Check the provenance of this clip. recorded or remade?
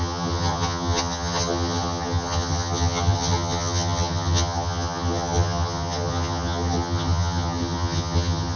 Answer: remade